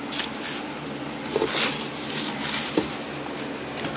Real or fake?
real